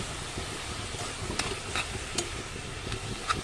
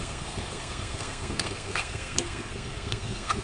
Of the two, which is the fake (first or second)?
second